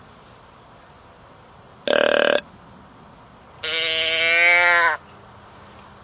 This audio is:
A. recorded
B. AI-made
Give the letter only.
A